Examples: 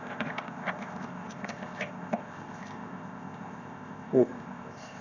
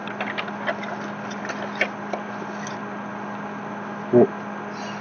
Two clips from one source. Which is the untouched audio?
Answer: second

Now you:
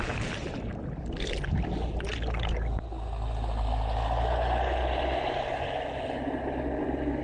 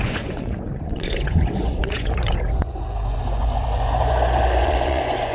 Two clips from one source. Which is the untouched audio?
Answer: first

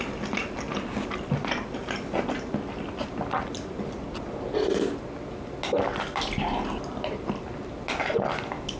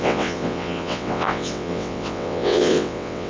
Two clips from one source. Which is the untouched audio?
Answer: first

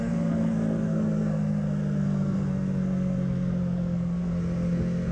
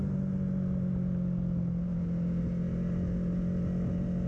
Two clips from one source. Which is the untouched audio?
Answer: second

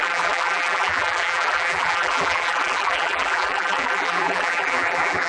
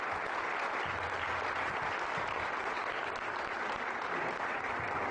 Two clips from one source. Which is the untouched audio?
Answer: second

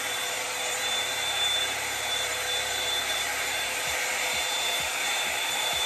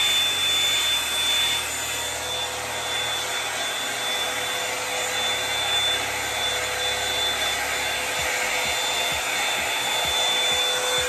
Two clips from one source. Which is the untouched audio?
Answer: second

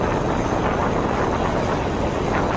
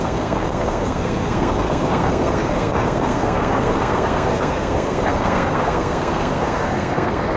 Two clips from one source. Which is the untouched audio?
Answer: first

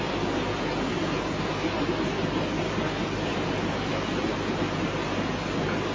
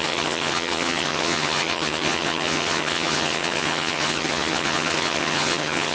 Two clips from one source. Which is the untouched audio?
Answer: first